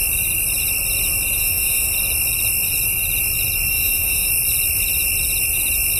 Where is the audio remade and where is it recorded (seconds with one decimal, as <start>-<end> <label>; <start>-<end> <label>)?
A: 0.0-1.4 recorded; 1.4-1.9 remade; 1.9-3.7 recorded; 3.7-4.3 remade; 4.3-6.0 recorded